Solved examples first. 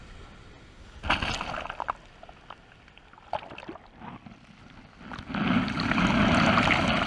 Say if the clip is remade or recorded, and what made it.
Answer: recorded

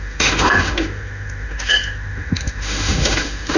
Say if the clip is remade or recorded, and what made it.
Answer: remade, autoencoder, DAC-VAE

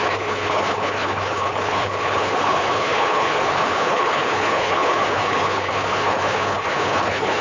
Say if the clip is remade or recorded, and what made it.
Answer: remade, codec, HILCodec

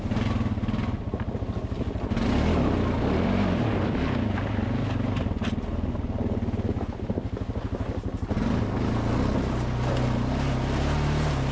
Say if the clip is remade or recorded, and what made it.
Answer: recorded